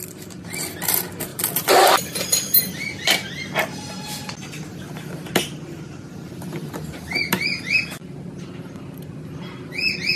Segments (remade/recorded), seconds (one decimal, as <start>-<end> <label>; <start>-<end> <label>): 0.0-10.2 recorded

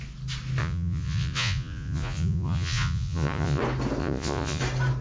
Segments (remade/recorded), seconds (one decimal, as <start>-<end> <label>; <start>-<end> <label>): 0.0-0.6 recorded; 0.6-3.6 remade; 3.6-4.0 recorded; 4.0-4.6 remade; 4.6-5.0 recorded

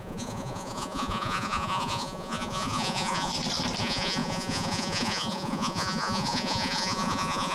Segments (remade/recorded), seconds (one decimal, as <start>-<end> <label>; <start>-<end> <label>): 0.0-3.3 remade; 3.3-3.8 recorded; 3.8-7.5 remade

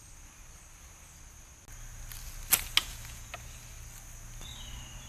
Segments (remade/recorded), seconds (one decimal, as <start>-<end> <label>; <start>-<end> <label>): 0.0-2.8 recorded; 2.8-3.3 remade; 3.3-5.1 recorded

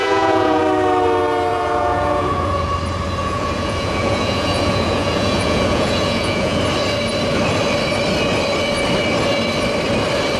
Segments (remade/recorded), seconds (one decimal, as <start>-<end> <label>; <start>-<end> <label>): 0.0-0.6 remade; 0.6-1.5 recorded; 1.5-2.7 remade; 2.7-3.2 recorded; 3.2-6.6 remade; 6.6-10.4 recorded

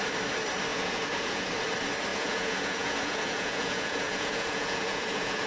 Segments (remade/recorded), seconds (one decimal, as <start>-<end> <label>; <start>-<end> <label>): 0.0-0.7 recorded; 0.7-1.5 remade; 1.5-2.1 recorded; 2.1-5.5 remade

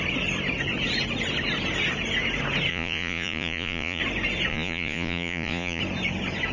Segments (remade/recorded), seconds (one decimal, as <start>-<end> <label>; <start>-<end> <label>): 0.0-2.7 recorded; 2.7-4.0 remade; 4.0-4.5 recorded; 4.5-5.8 remade; 5.8-6.5 recorded

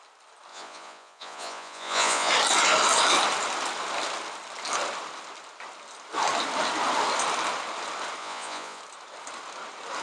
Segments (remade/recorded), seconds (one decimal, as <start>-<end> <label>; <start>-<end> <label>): 0.0-0.5 recorded; 0.5-2.3 remade; 2.3-8.2 recorded; 8.2-8.8 remade; 8.8-10.0 recorded